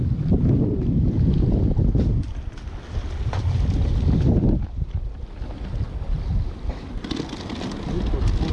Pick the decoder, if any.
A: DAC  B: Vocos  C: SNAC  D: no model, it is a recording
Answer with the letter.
D